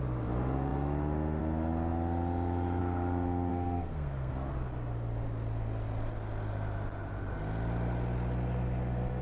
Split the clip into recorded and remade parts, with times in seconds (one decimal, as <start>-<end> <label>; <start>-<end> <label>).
0.0-3.5 recorded; 3.5-4.3 remade; 4.3-9.2 recorded